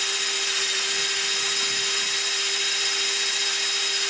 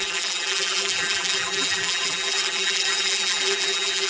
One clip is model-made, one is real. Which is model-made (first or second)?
second